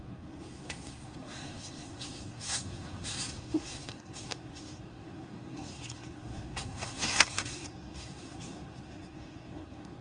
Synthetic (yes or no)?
yes